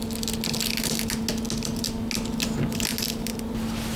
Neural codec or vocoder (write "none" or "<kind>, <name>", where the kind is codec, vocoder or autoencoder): none